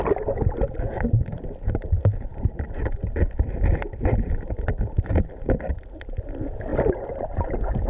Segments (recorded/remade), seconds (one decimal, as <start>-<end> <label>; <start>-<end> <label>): 0.0-2.3 recorded; 2.3-3.5 remade; 3.5-7.9 recorded